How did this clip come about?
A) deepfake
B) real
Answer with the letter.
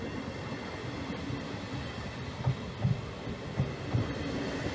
B